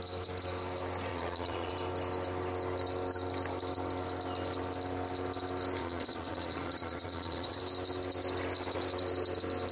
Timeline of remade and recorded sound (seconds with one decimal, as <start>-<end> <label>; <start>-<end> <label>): 0.0-1.1 recorded; 1.1-1.7 remade; 1.7-5.8 recorded; 5.8-7.6 remade; 7.6-9.7 recorded